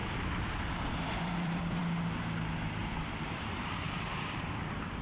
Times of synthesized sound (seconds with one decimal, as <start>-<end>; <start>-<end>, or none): 0.0-1.8; 2.8-5.0